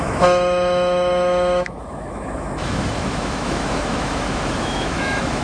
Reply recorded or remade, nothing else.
remade